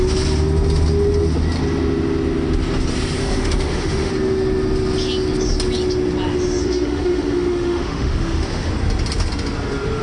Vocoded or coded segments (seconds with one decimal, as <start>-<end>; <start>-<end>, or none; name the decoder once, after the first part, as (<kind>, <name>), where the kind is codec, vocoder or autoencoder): 3.2-4.1 (autoencoder, DAC-VAE); 6.6-8.7